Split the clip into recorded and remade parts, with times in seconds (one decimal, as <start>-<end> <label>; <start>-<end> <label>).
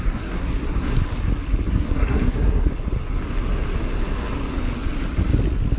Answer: 0.0-1.0 remade; 1.0-1.7 recorded; 1.7-2.7 remade; 2.7-5.8 recorded